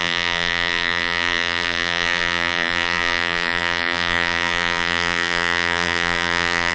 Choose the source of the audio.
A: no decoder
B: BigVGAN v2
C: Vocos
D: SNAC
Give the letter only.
B